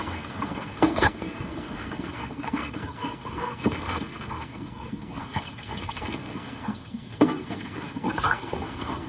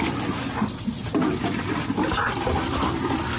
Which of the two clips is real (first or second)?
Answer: second